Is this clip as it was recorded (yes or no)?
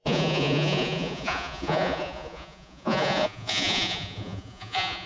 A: no